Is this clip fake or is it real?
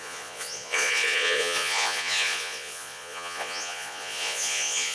fake